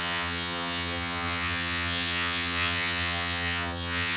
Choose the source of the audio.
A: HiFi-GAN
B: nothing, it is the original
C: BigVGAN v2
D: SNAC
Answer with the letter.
A